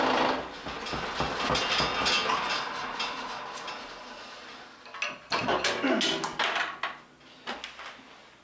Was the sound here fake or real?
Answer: real